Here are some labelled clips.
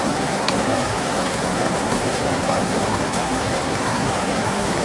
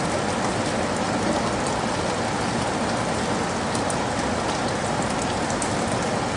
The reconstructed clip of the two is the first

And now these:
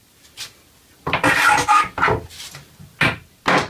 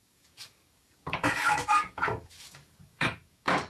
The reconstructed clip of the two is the second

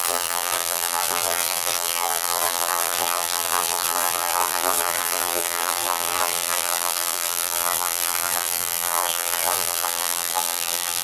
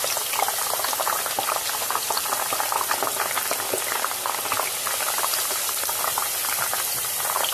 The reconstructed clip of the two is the first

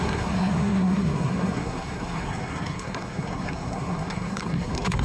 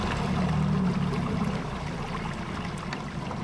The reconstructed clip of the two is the first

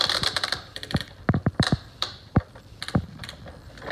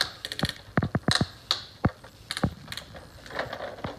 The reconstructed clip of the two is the first